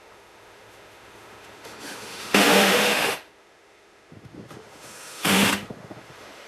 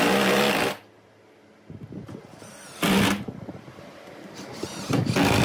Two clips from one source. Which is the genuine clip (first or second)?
second